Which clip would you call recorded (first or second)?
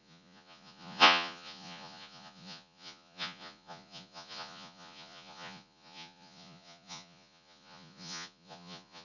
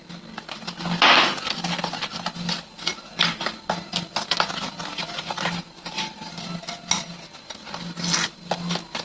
second